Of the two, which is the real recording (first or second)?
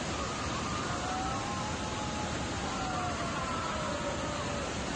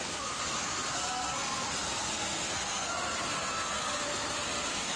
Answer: first